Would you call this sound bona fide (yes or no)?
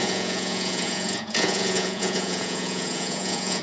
no